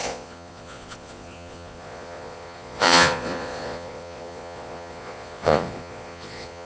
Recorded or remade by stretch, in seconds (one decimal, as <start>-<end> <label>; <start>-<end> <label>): 0.0-6.6 remade